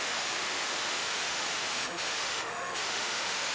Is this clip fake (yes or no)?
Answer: yes